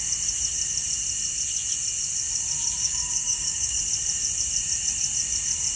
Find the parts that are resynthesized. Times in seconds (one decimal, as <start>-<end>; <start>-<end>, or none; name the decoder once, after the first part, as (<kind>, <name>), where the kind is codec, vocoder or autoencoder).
2.8-3.8 (codec, DAC)